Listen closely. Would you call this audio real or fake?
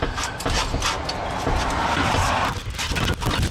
real